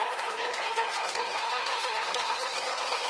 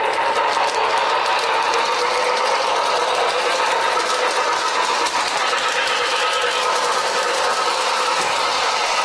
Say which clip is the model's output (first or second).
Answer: first